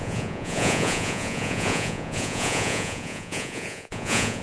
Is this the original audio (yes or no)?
no